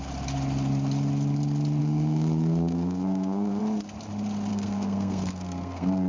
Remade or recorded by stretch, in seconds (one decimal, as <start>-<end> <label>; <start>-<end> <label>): 0.0-1.8 recorded; 1.8-3.6 remade; 3.6-4.5 recorded; 4.5-6.1 remade

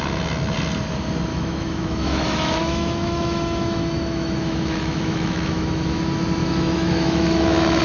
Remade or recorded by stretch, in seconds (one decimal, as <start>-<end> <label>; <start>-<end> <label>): 0.0-1.3 recorded; 1.3-6.0 remade; 6.0-6.4 recorded; 6.4-7.8 remade

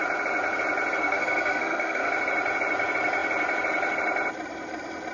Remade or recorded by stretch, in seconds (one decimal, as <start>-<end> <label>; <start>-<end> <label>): 0.0-1.0 recorded; 1.0-2.1 remade; 2.1-5.1 recorded

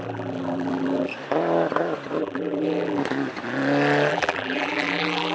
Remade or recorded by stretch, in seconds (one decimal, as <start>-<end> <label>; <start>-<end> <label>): 0.0-1.1 remade; 1.1-2.2 recorded; 2.2-3.0 remade; 3.0-4.1 recorded; 4.1-5.3 remade